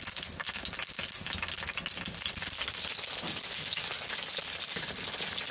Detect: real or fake real